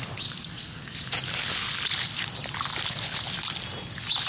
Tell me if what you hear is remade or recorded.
recorded